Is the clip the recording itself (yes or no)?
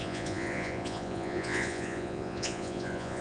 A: no